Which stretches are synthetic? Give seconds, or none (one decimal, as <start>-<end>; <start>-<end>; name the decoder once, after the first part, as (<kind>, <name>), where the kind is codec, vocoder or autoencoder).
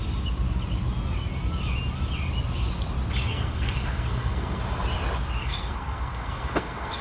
3.3-4.6 (codec, SNAC); 5.4-7.0